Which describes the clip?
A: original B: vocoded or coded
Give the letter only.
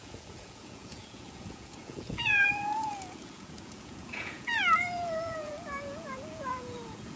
B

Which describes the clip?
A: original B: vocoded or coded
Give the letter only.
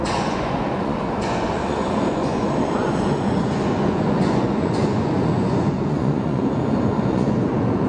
B